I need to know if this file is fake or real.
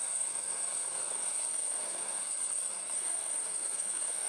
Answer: fake